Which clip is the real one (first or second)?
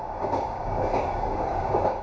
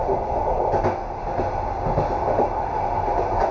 second